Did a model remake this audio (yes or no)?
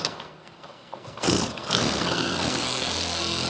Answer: yes